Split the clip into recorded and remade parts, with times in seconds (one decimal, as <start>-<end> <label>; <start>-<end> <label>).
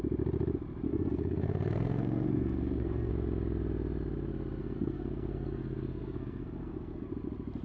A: 0.0-0.9 recorded; 0.9-3.1 remade; 3.1-4.6 recorded; 4.6-7.1 remade; 7.1-7.6 recorded